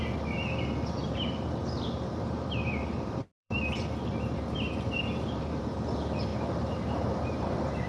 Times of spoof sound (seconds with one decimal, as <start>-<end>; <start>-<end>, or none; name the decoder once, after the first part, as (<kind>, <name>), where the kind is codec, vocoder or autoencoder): 1.0-5.7 (vocoder, BigVGAN v2); 6.3-7.9